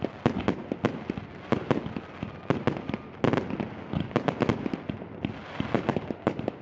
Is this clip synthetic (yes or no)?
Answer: no